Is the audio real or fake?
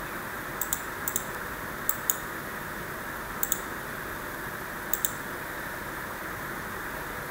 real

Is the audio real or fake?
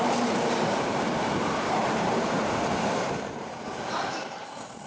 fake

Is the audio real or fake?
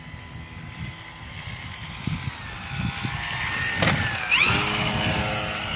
real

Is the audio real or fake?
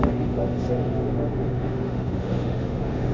fake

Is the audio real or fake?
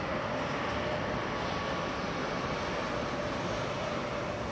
real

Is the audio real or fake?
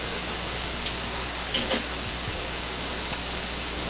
fake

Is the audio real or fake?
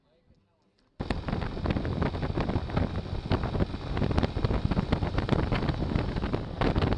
real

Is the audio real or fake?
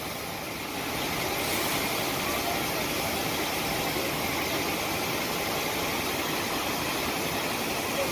real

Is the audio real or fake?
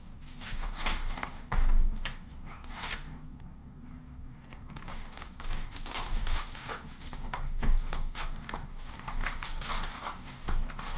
fake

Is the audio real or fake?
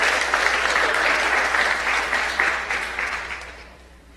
fake